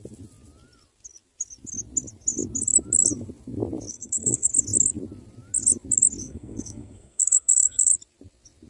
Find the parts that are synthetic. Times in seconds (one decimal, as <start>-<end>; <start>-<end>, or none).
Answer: 3.9-4.5; 6.2-7.9

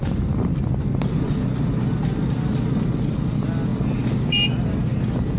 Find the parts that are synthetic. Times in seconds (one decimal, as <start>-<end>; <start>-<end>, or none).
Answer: none

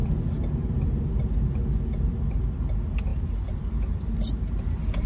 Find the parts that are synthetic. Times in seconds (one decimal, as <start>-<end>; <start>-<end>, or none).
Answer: none

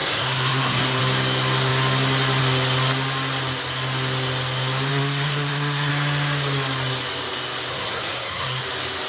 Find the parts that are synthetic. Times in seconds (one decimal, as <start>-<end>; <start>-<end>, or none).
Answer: 0.0-1.0; 4.9-5.9; 7.7-8.6

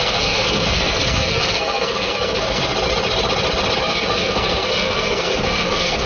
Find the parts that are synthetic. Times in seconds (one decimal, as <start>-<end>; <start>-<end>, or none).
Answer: 0.0-2.7; 3.8-6.1

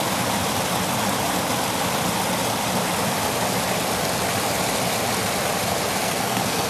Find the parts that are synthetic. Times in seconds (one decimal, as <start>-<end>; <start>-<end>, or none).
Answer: 6.0-6.7

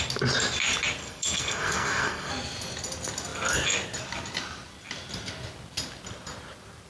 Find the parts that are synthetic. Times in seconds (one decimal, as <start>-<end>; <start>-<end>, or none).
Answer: 1.0-2.3

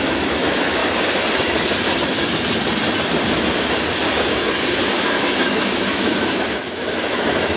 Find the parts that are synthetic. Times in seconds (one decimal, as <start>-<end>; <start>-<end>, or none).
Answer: 0.0-0.8; 4.8-7.6